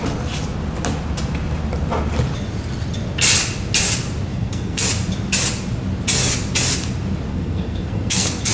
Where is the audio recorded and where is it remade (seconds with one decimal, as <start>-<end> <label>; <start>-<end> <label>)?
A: 0.0-4.3 recorded; 4.3-4.8 remade; 4.8-7.3 recorded; 7.3-8.5 remade